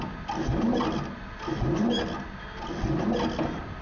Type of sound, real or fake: real